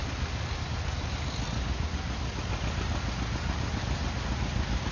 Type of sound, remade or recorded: recorded